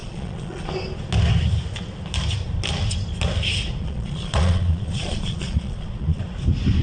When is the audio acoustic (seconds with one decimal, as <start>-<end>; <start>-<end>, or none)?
0.7-3.8; 6.2-6.8